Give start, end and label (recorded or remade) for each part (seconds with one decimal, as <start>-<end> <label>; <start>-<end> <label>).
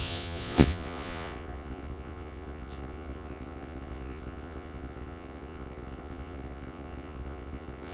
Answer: 0.0-7.9 remade